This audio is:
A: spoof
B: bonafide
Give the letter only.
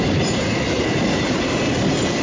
A